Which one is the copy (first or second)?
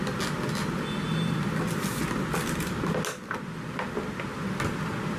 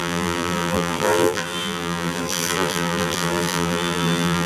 second